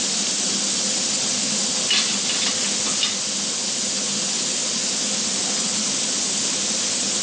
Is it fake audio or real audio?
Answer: real